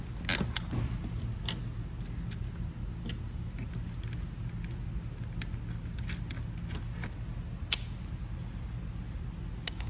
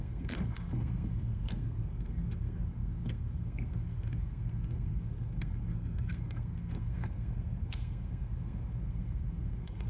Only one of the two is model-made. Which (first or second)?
second